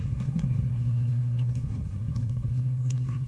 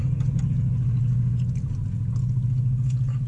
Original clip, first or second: second